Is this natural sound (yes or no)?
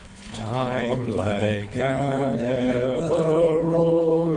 no